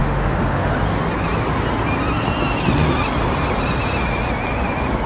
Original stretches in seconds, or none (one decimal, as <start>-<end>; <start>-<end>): 0.7-5.1